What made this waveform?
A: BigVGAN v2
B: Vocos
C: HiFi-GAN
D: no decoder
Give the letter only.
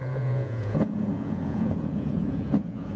B